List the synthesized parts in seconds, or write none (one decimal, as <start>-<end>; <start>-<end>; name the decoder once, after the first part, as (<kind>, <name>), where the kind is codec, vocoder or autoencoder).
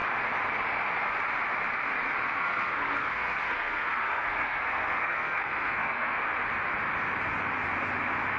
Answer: 2.4-6.2 (codec, SNAC)